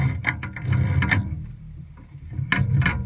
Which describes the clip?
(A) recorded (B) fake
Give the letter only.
A